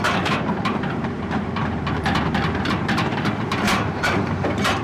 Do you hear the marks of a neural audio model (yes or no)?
yes